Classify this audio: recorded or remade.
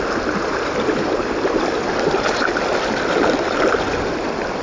recorded